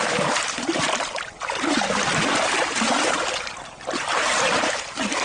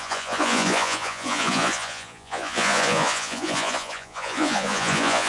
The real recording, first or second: first